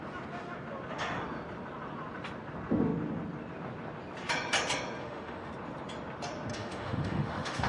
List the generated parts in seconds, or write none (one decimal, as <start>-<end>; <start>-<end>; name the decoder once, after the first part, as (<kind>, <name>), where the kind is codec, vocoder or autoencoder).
5.0-5.5 (autoencoder, DAC-VAE); 6.5-7.7